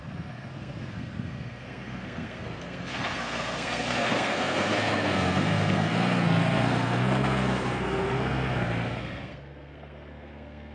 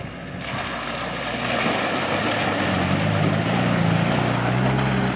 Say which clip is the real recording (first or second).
second